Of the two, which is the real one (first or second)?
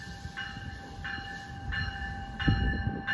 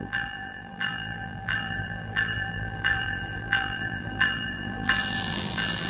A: first